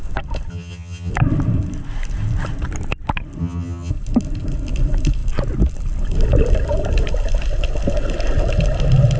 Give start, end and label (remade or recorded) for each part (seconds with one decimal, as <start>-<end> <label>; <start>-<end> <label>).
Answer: 0.0-0.5 recorded; 0.5-1.1 remade; 1.1-3.4 recorded; 3.4-3.9 remade; 3.9-9.2 recorded